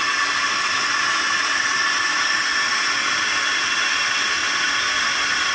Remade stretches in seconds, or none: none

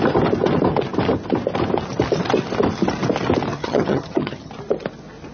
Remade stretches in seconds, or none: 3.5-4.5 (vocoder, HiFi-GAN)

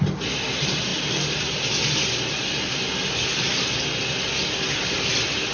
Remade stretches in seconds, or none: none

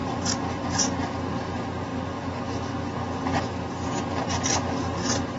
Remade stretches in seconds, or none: none

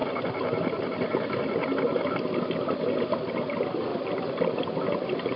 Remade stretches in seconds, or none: none

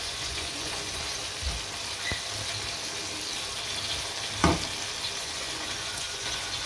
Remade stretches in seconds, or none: 0.0-1.2 (vocoder, Vocos); 5.2-6.7

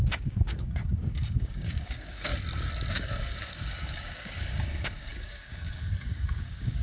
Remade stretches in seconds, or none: 0.0-2.3 (codec, DAC); 2.9-6.8